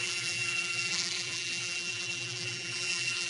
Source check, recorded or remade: remade